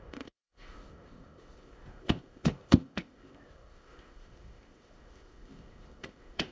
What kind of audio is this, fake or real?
fake